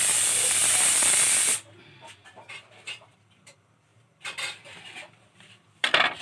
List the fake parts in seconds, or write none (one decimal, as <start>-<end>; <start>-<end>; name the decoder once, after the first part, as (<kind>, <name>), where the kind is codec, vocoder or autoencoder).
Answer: 0.0-6.2 (vocoder, BigVGAN v2)